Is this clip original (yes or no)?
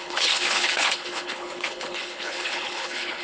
no